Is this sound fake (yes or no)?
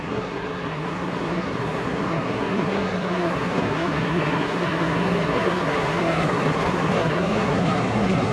yes